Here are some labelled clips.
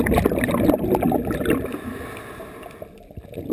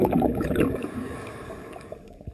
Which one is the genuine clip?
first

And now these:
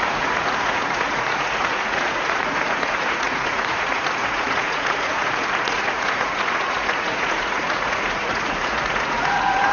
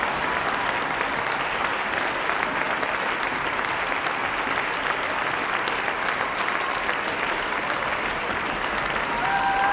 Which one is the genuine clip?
second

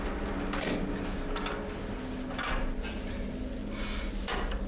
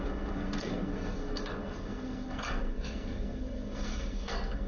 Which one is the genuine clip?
first